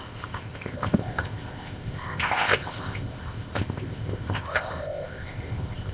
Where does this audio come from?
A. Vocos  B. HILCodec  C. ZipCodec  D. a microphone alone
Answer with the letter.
C